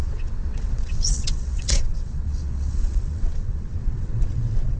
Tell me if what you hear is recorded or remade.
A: remade